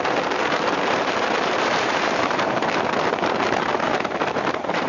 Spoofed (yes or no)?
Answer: yes